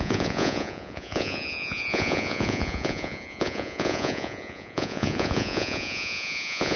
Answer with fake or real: fake